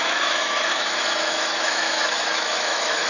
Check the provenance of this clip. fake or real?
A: fake